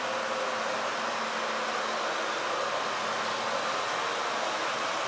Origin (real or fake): real